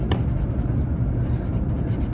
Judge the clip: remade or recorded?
recorded